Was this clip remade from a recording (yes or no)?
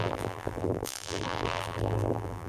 yes